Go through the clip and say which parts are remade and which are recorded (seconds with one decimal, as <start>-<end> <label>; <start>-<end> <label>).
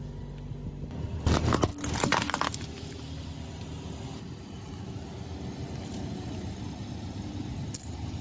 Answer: 0.0-8.2 recorded